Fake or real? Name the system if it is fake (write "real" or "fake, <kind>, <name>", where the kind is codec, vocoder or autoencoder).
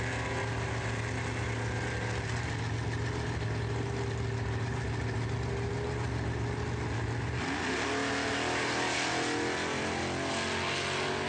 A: real